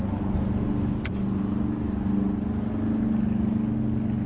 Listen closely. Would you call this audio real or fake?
real